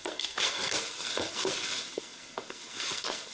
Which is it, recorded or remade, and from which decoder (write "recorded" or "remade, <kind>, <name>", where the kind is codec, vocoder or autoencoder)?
remade, codec, SNAC